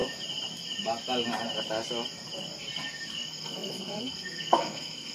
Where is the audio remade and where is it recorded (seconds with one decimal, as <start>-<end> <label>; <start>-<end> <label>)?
0.0-3.1 recorded; 3.1-5.1 remade